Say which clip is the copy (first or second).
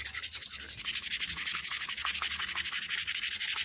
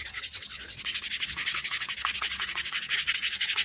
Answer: second